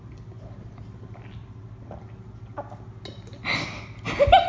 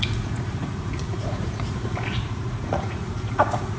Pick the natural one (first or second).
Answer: first